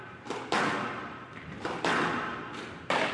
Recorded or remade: remade